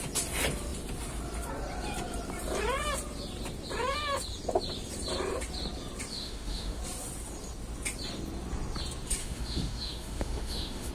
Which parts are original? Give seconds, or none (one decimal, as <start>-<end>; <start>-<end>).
0.0-6.1; 6.8-9.2